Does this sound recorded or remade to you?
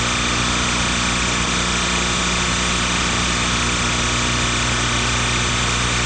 recorded